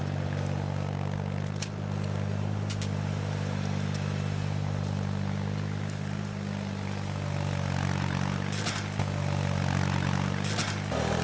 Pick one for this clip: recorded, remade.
recorded